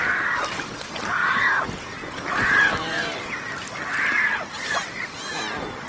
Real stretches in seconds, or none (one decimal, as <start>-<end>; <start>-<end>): 0.0-5.9